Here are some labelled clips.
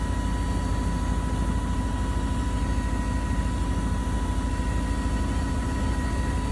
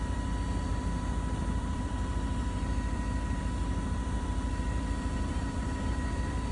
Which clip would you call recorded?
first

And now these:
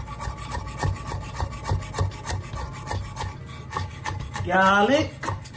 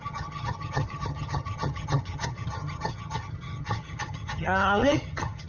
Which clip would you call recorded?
first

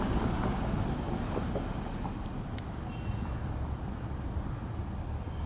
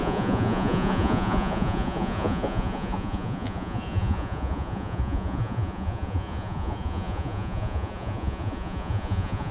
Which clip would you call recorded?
first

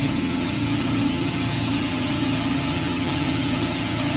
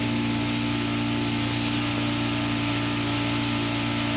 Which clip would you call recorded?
second